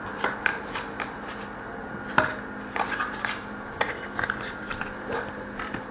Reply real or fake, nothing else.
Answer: real